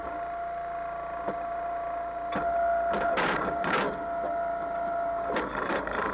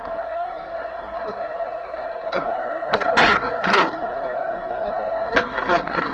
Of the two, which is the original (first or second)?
first